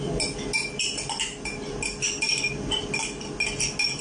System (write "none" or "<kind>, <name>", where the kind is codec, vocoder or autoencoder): none